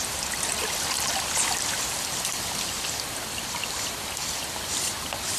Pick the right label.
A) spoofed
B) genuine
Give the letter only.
B